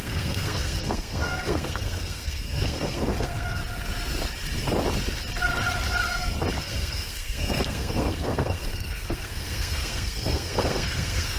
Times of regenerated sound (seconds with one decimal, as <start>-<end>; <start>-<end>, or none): 0.0-3.6; 6.6-11.4